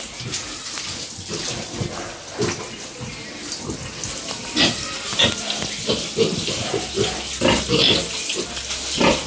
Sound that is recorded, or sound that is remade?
recorded